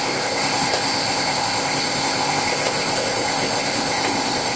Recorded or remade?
remade